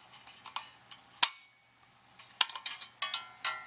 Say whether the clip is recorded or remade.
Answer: recorded